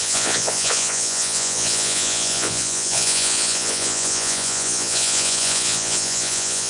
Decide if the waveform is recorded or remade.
remade